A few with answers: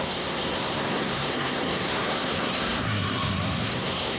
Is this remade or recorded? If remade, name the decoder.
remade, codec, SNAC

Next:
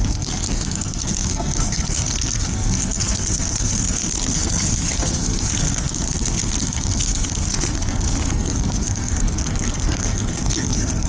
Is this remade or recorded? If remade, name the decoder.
remade, codec, SNAC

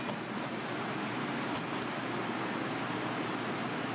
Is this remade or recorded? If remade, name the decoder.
recorded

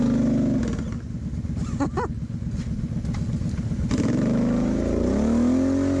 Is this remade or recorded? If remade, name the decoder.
recorded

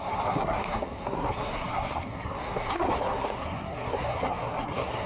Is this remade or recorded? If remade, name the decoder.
remade, codec, SNAC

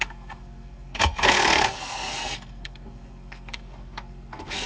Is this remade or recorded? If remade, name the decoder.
remade, codec, SNAC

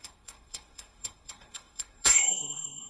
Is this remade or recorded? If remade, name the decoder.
remade, codec, SNAC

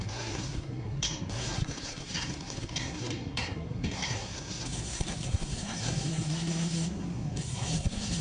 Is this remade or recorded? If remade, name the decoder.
remade, codec, SNAC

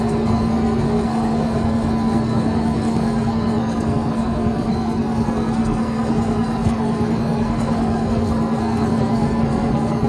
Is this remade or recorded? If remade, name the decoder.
remade, codec, SNAC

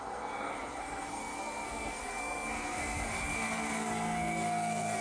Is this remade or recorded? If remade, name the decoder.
remade, codec, SNAC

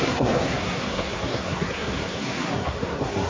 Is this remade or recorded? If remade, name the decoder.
remade, codec, SNAC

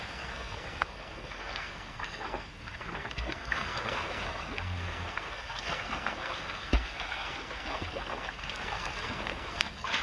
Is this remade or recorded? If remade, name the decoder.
remade, codec, SNAC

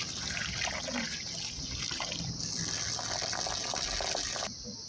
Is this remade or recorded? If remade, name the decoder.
recorded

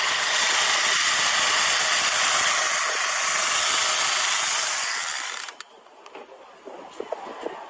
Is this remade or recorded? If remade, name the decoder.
recorded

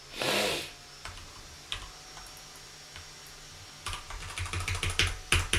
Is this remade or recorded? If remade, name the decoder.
recorded